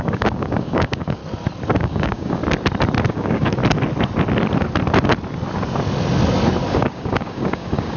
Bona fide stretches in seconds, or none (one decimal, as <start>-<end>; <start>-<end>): 1.2-1.8; 2.4-3.1; 3.6-6.7